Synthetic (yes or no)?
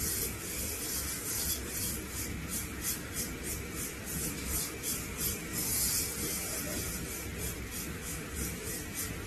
no